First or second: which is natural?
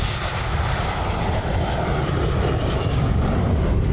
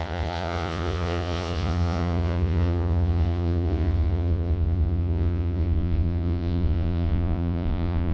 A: first